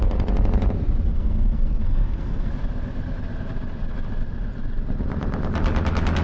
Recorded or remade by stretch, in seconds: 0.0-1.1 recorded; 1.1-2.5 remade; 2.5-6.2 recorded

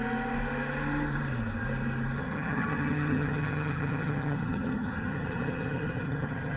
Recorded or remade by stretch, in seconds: 0.0-2.2 recorded; 2.2-6.6 remade

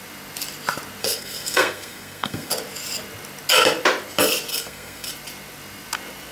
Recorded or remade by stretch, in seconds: 0.0-1.0 recorded; 1.0-2.5 remade; 2.5-4.5 recorded; 4.5-5.1 remade; 5.1-6.3 recorded

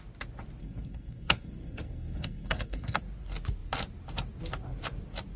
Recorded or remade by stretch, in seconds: 0.0-0.6 recorded; 0.6-3.0 remade; 3.0-5.4 recorded

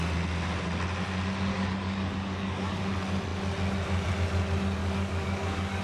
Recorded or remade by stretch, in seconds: 0.0-1.5 recorded; 1.5-2.8 remade; 2.8-4.8 recorded; 4.8-5.8 remade